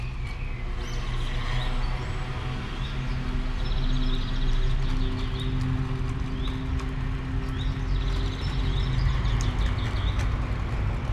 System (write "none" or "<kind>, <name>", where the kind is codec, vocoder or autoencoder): none